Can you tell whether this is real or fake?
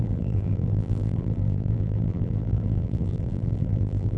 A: fake